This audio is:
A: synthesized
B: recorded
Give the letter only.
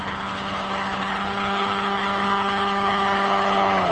A